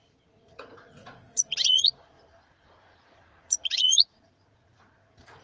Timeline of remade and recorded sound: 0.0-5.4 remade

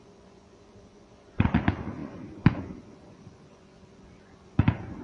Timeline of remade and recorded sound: 0.0-5.0 remade

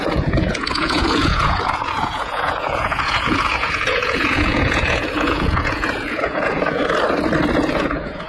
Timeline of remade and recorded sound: 0.0-6.8 remade; 6.8-7.6 recorded; 7.6-8.3 remade

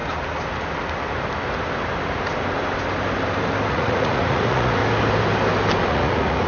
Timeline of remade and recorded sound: 0.0-3.7 recorded; 3.7-4.8 remade; 4.8-5.9 recorded; 5.9-6.5 remade

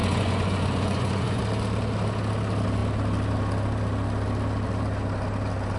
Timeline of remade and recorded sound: 0.0-1.4 remade; 1.4-5.8 recorded

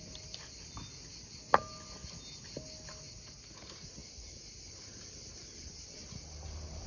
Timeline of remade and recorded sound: 0.0-6.9 recorded